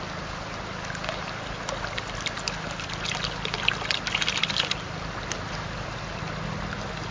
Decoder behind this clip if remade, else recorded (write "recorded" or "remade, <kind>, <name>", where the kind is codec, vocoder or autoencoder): recorded